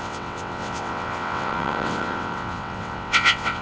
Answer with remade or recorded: remade